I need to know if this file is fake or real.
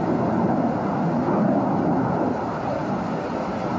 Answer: real